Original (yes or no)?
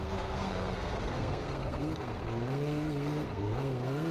no